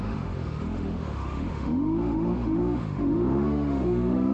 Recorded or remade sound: remade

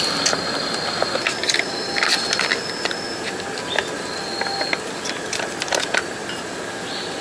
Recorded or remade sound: recorded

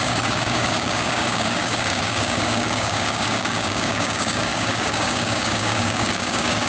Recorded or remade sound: remade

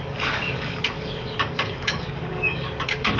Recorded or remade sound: remade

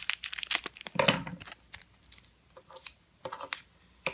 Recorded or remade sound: recorded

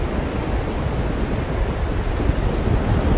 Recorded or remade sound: recorded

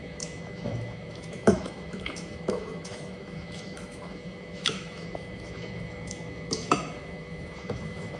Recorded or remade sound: remade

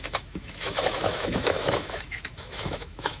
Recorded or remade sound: remade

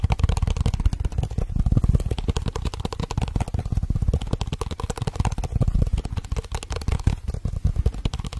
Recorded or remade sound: recorded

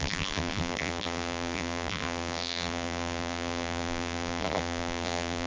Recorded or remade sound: remade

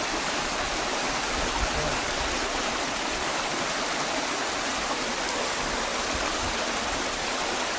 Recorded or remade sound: recorded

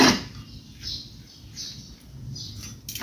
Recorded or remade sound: recorded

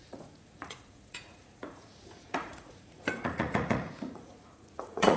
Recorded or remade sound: remade